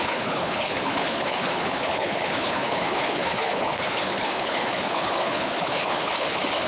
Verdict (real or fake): fake